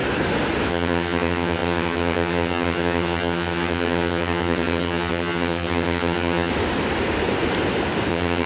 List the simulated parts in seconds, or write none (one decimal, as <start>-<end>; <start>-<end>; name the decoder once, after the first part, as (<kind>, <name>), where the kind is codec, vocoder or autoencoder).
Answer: 0.7-6.5 (vocoder, HiFi-GAN); 8.1-8.5